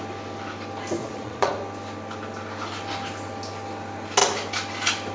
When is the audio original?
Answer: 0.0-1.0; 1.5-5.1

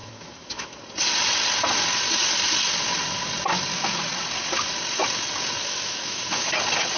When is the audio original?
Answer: 0.8-5.6; 6.5-7.0

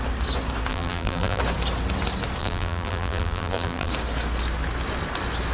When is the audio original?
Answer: 0.0-0.7; 1.4-2.4; 3.9-5.5